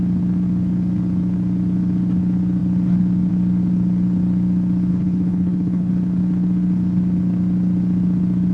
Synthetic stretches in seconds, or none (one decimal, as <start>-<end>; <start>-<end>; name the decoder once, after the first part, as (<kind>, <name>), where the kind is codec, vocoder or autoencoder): 4.9-5.9 (codec, HILCodec)